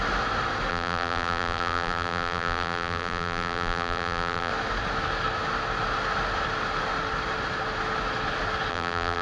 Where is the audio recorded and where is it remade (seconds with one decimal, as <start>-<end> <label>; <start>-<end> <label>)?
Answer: 0.0-0.7 recorded; 0.7-4.5 remade; 4.5-8.7 recorded; 8.7-9.2 remade